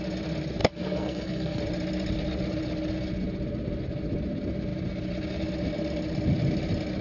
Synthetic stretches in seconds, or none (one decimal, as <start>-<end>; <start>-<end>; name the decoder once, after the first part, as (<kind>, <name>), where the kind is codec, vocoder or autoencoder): 0.6-1.6 (codec, SNAC)

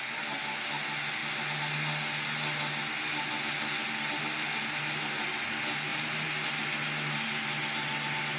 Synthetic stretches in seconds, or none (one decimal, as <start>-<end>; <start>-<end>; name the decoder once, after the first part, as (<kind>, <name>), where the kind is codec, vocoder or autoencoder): 5.9-6.6 (vocoder, BigVGAN v2)

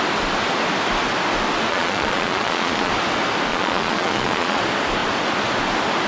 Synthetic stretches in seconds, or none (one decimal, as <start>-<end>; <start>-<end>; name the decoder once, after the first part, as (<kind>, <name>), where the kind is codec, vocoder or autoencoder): 1.7-2.9 (vocoder, Vocos); 3.5-4.6

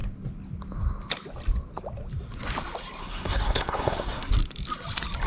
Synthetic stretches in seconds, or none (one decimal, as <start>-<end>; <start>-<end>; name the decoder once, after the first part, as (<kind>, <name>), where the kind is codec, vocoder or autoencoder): 3.0-4.3 (codec, SNAC)

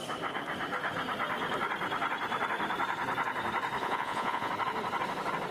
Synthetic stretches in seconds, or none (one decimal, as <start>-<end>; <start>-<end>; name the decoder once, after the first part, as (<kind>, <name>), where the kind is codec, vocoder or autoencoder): 3.8-4.5 (vocoder, Vocos)